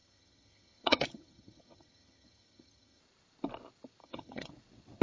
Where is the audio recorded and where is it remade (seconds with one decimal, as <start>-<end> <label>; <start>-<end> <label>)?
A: 0.0-3.0 remade; 3.0-4.0 recorded; 4.0-4.5 remade; 4.5-5.0 recorded

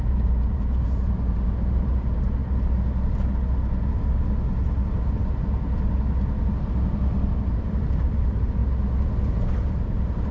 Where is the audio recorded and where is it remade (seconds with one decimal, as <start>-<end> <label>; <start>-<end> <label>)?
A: 0.0-2.4 remade; 2.4-7.5 recorded; 7.5-8.6 remade; 8.6-9.3 recorded; 9.3-10.3 remade